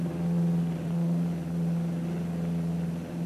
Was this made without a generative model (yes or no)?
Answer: yes